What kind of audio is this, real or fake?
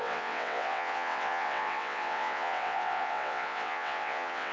fake